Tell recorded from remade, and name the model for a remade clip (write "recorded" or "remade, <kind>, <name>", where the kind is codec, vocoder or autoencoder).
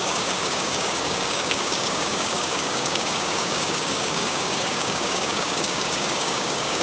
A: remade, codec, DAC